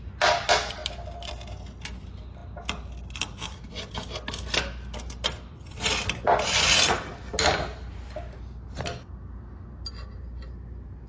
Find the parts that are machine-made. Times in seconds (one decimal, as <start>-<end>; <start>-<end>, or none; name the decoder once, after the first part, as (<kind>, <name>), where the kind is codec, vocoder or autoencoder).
none